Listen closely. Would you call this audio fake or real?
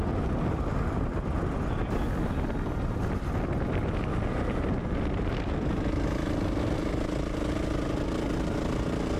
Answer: real